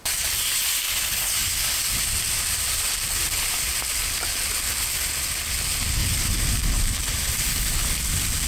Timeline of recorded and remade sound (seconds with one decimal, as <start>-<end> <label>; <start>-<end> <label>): 0.0-6.0 recorded; 6.0-7.3 remade; 7.3-8.5 recorded